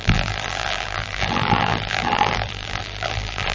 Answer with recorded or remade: remade